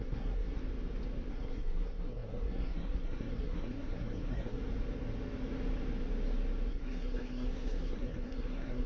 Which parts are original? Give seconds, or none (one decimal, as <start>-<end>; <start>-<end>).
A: 0.6-1.3; 4.6-6.7